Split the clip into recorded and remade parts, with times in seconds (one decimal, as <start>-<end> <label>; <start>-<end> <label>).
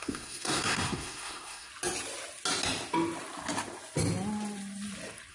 0.0-1.7 remade; 1.7-5.3 recorded